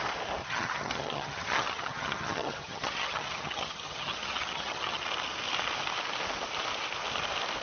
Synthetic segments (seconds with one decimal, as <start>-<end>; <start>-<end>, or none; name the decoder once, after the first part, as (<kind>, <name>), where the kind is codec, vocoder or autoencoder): 0.4-5.0 (vocoder, HiFi-GAN)